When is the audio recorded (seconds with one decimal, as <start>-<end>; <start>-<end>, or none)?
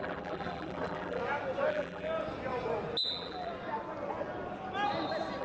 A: 1.2-1.7; 2.1-3.1; 3.5-5.4